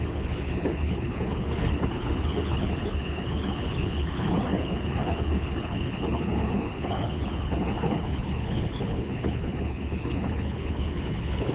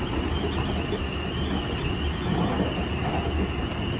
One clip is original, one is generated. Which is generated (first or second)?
first